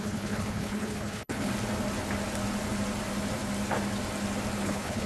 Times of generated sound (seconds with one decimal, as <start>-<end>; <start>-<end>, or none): 0.0-1.5; 4.6-5.1